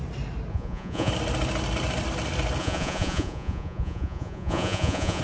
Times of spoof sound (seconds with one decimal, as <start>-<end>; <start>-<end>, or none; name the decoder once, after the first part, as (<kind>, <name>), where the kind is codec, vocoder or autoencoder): 0.5-1.1 (vocoder, Vocos); 2.6-5.2